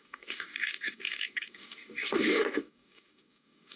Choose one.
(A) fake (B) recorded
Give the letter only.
A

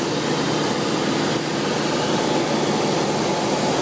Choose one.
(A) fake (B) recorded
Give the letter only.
B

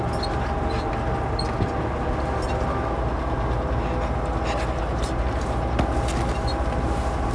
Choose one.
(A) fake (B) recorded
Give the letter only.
B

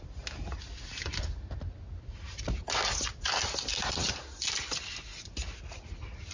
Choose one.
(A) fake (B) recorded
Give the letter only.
B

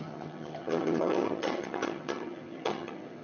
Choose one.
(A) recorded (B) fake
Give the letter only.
B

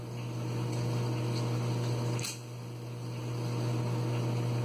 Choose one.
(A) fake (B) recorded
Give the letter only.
B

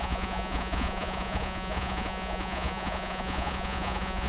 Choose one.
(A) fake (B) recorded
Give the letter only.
A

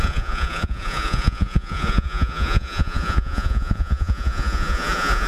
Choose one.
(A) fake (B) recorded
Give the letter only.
A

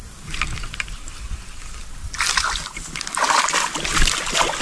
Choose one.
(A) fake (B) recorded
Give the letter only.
B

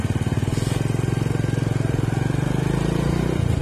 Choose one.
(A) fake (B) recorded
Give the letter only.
B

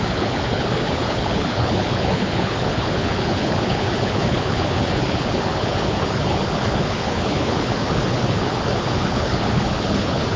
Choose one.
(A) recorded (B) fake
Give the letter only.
B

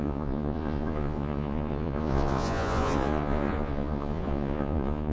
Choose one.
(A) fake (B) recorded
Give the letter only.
A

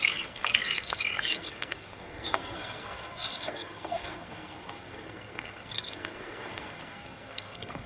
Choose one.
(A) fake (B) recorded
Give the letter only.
A